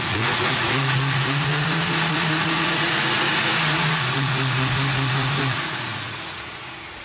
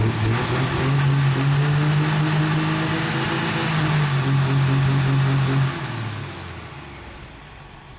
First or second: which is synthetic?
first